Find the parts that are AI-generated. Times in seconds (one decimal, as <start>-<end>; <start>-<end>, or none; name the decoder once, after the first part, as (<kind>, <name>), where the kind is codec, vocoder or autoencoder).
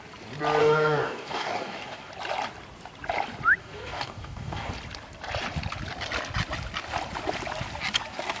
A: 0.6-2.1 (codec, DAC); 3.6-4.7